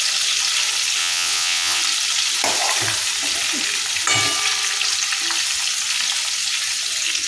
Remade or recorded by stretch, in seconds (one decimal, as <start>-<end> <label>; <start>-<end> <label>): 0.0-1.0 recorded; 1.0-1.8 remade; 1.8-7.3 recorded